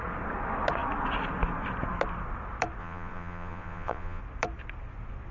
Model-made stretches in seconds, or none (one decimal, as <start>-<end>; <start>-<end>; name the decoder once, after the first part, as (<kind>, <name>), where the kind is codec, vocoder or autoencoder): 2.8-4.2 (vocoder, Vocos)